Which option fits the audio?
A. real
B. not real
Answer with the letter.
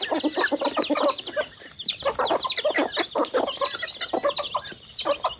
A